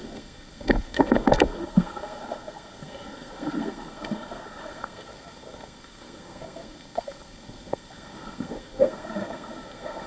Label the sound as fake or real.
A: fake